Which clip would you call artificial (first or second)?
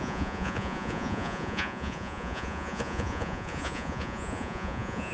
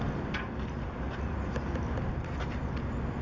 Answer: first